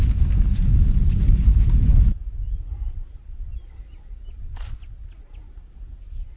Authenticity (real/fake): real